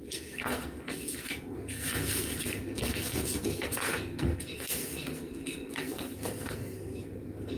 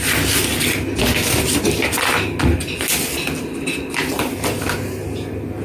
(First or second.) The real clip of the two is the second